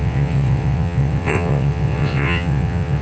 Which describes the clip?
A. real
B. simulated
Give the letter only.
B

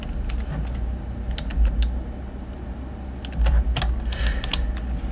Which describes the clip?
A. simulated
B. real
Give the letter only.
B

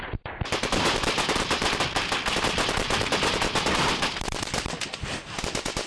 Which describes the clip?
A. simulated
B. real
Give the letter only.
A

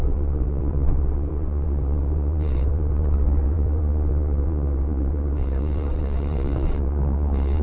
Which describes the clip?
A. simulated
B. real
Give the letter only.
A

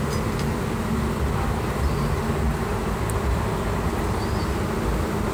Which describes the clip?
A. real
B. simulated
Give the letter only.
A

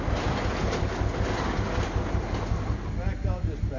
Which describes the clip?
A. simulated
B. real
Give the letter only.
B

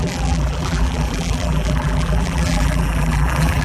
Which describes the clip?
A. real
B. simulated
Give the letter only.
B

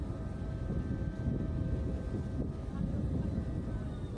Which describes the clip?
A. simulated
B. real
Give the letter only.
B